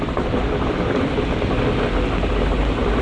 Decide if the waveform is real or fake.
real